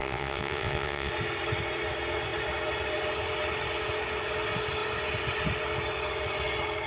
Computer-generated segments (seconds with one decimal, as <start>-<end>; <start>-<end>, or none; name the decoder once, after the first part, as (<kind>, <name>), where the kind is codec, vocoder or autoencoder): 0.0-1.1 (vocoder, WaveNeXt)